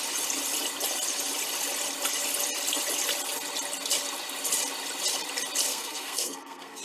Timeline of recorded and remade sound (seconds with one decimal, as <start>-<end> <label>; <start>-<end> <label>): 0.0-5.7 recorded; 5.7-6.8 remade